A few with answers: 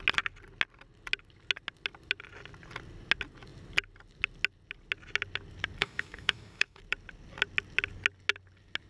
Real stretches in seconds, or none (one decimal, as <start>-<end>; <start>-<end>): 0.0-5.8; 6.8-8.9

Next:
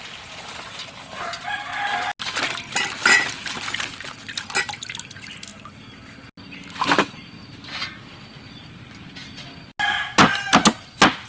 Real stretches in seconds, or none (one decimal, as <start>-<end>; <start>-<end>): 0.0-11.3

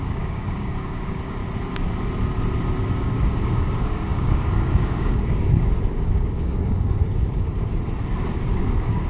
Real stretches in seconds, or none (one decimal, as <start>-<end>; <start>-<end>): 1.4-2.9; 7.5-8.4

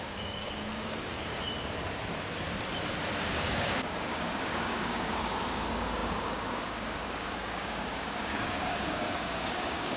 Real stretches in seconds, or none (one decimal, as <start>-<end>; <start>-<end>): 1.3-3.2